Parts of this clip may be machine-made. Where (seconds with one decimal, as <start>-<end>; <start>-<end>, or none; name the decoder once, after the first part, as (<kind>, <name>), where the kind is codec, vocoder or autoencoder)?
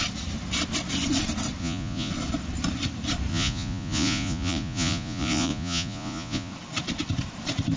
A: 1.6-2.1 (vocoder, Vocos); 3.3-6.5